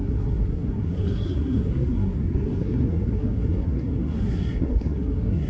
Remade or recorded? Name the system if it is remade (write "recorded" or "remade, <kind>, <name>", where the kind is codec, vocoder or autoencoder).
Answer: remade, codec, SNAC